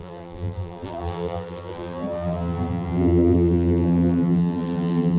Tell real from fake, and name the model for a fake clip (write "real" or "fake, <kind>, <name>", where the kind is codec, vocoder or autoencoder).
fake, vocoder, BigVGAN v2